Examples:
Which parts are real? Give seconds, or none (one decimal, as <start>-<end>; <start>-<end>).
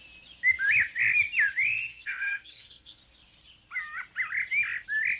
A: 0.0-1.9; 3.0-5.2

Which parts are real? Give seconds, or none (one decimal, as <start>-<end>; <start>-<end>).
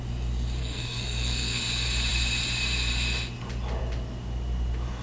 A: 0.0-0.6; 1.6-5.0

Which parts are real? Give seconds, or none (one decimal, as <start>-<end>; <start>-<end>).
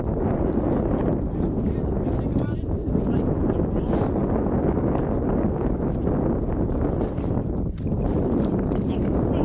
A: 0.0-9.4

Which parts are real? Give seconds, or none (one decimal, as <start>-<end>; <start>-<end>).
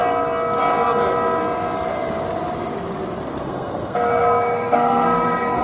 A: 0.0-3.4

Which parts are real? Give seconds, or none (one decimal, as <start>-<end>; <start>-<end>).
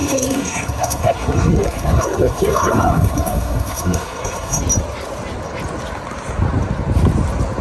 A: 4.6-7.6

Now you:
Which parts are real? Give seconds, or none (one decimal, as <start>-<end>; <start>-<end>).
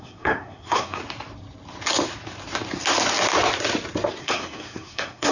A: 1.0-4.2